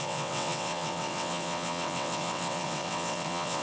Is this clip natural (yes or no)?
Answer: no